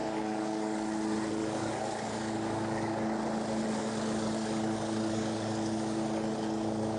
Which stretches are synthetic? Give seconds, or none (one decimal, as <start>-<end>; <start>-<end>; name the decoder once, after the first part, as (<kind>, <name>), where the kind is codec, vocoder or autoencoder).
0.0-0.9 (codec, DAC); 1.4-3.0; 3.8-7.0